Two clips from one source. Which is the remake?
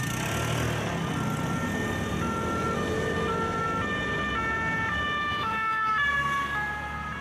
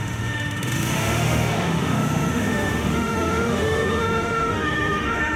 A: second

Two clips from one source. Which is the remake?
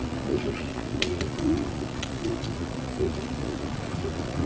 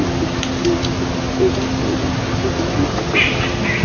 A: first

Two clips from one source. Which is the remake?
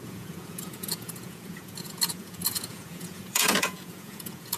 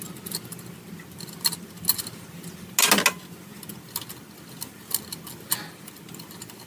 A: first